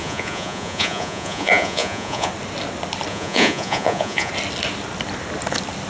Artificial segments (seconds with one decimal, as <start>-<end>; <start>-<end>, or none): 0.0-2.3; 3.1-4.3